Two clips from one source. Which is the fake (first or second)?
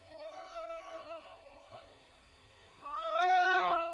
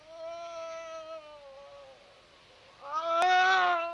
first